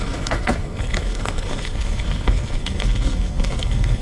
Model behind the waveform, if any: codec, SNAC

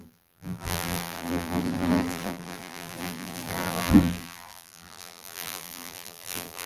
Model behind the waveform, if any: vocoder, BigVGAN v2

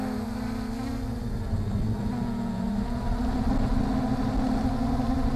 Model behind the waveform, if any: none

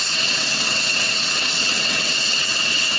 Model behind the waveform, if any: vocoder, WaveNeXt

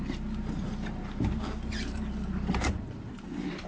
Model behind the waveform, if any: none